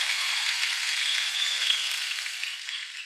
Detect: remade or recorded remade